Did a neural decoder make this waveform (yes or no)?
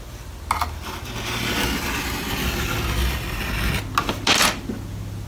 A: no